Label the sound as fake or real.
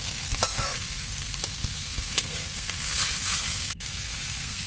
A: fake